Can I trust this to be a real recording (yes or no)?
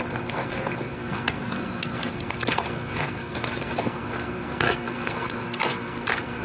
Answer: no